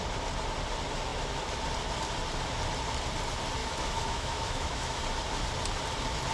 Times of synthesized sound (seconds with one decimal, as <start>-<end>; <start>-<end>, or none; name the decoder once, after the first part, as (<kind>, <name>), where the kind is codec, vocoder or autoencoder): 3.6-5.0 (autoencoder, DAC-VAE)